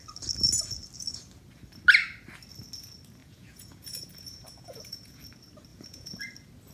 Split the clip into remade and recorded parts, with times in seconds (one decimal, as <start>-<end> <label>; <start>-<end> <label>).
0.0-3.2 recorded; 3.2-5.2 remade; 5.2-5.7 recorded; 5.7-6.2 remade; 6.2-6.7 recorded